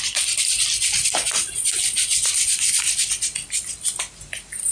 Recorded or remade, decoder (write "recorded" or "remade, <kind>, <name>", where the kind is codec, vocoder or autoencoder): recorded